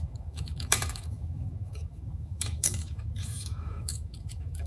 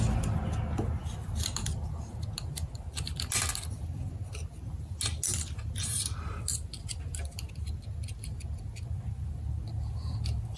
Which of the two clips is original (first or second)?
second